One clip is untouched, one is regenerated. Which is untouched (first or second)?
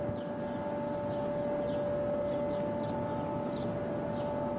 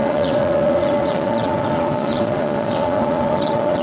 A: first